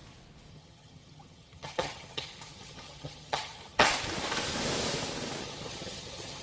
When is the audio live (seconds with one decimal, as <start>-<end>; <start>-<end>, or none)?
0.0-0.5; 3.9-5.4